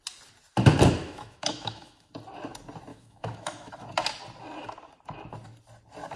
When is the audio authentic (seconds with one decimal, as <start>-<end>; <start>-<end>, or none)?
0.0-1.0; 2.1-2.9; 3.7-6.2

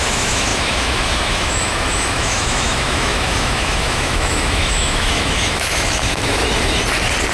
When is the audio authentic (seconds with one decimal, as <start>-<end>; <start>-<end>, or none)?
6.4-7.3

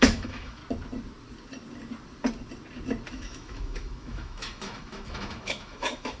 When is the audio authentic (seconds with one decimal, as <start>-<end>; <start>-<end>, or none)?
0.6-3.1